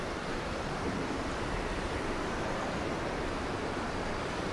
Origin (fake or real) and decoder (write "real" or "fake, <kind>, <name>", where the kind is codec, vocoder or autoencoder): fake, vocoder, BigVGAN v2